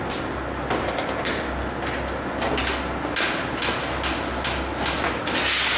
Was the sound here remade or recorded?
recorded